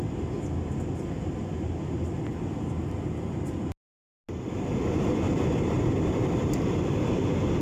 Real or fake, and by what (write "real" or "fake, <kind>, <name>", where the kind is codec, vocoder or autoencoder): real